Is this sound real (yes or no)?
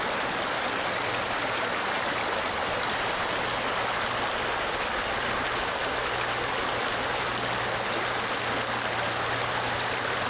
yes